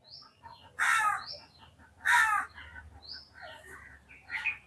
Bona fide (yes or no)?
yes